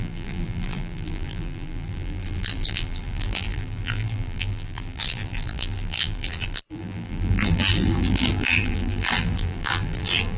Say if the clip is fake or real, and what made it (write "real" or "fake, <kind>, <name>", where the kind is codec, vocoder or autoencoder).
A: fake, vocoder, BigVGAN v2